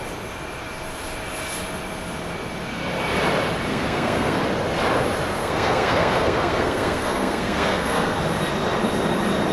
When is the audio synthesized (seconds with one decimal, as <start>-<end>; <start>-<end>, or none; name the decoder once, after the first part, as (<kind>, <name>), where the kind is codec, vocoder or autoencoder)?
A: 3.7-4.4 (codec, SNAC); 5.4-8.2

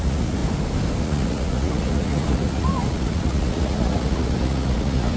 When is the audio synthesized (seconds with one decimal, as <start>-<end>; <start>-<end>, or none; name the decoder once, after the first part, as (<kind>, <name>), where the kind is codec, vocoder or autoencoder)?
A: 0.0-0.4 (vocoder, Vocos); 1.0-5.2

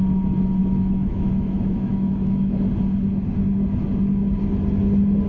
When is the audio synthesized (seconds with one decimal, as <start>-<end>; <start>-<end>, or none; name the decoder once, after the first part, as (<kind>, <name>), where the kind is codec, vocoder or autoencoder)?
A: 0.6-2.7 (autoencoder, DAC-VAE)

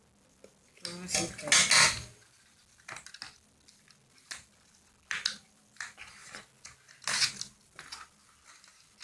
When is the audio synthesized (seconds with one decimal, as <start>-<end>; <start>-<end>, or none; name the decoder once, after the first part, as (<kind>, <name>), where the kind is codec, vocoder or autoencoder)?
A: none

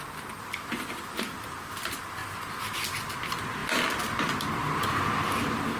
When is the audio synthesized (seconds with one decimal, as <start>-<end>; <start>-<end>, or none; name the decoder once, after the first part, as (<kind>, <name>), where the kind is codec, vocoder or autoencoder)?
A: none

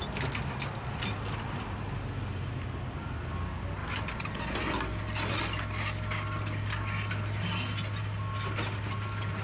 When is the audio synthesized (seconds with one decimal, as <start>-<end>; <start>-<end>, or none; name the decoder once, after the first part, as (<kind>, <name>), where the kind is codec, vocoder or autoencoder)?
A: none

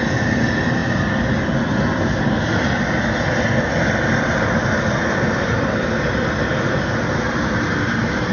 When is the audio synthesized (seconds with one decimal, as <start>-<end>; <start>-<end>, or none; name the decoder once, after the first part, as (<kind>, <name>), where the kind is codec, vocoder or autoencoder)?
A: none

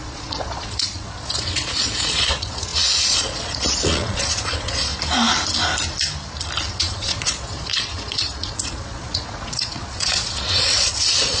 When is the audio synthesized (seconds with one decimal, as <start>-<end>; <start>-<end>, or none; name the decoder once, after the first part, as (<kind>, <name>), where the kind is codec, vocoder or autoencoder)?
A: 0.0-4.9 (vocoder, Vocos); 6.7-11.4